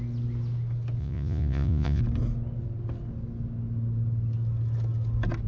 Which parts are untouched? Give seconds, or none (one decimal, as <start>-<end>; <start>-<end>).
0.0-1.0; 2.0-5.5